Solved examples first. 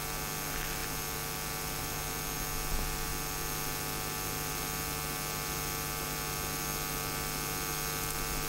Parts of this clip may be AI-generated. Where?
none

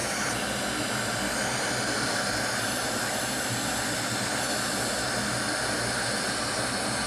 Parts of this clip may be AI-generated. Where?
none

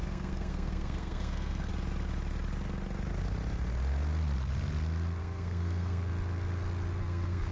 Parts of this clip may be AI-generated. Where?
0.0-1.7 (codec, SNAC); 5.2-6.1; 7.0-7.5

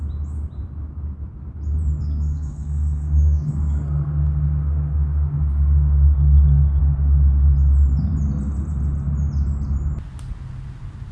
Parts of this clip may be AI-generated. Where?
2.0-6.8 (codec, SNAC)

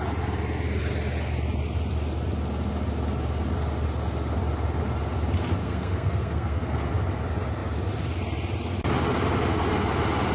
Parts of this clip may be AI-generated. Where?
5.6-6.9 (codec, SNAC)

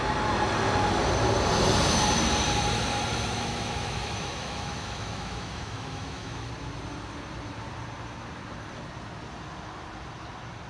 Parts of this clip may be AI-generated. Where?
3.1-6.5 (autoencoder, DAC-VAE)

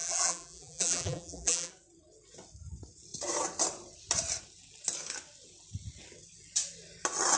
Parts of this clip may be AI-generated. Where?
0.0-1.7 (vocoder, BigVGAN v2)

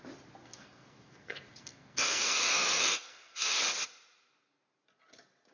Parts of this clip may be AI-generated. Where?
0.4-3.6 (codec, SNAC)